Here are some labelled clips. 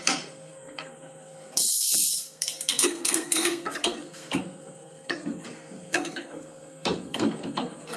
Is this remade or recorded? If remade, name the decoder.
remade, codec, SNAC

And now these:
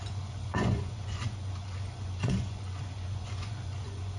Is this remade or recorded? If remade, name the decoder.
remade, vocoder, Vocos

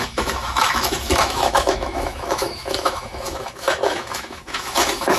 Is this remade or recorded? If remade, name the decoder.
remade, autoencoder, DAC-VAE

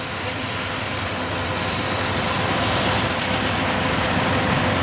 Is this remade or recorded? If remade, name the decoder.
recorded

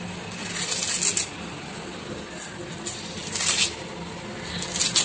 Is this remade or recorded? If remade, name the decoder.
recorded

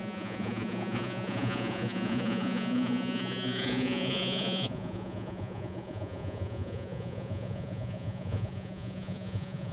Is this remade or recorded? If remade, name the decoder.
remade, vocoder, Vocos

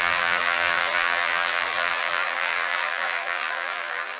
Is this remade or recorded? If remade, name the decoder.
remade, vocoder, BigVGAN v2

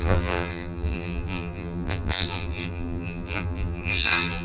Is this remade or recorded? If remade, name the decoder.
remade, vocoder, BigVGAN v2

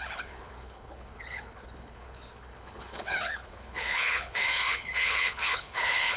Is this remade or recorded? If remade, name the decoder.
remade, codec, HILCodec